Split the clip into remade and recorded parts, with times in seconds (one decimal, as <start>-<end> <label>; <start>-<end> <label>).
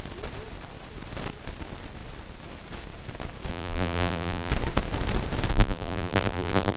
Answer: 0.0-3.5 recorded; 3.5-4.5 remade; 4.5-5.5 recorded; 5.5-6.8 remade